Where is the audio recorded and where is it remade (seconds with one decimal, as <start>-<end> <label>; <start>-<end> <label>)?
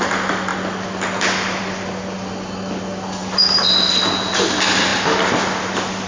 0.0-6.1 recorded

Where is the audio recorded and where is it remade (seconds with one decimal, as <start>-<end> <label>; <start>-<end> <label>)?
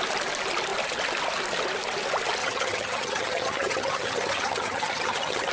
0.0-2.4 recorded; 2.4-5.5 remade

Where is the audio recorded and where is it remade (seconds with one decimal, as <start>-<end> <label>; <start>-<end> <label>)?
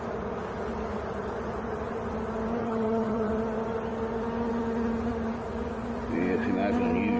0.0-2.6 recorded; 2.6-3.3 remade; 3.3-7.2 recorded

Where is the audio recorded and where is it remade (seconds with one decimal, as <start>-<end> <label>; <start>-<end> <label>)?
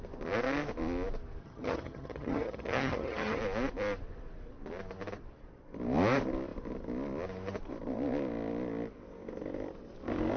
0.0-1.4 recorded; 1.4-3.4 remade; 3.4-10.4 recorded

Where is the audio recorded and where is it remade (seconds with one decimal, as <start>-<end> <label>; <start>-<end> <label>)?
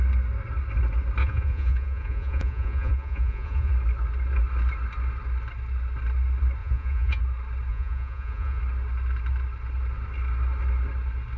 0.0-1.2 recorded; 1.2-3.7 remade; 3.7-6.6 recorded; 6.6-7.2 remade; 7.2-7.7 recorded; 7.7-8.6 remade; 8.6-11.4 recorded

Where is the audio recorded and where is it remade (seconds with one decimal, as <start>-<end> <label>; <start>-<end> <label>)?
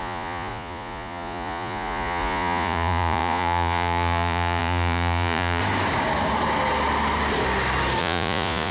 0.0-5.6 remade; 5.6-8.0 recorded; 8.0-8.7 remade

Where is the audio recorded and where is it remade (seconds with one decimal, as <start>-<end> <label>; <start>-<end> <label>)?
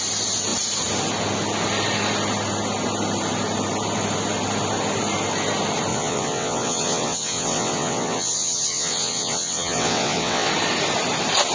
0.0-5.9 recorded; 5.9-10.5 remade; 10.5-11.5 recorded